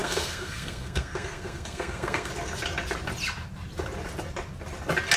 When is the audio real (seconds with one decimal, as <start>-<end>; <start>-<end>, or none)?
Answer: 2.3-5.2